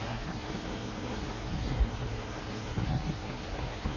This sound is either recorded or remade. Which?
remade